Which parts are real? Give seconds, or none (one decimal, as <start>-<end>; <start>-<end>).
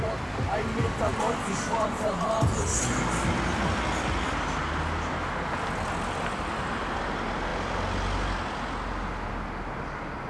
0.0-10.3